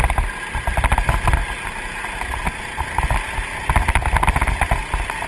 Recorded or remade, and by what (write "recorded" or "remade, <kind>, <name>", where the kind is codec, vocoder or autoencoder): recorded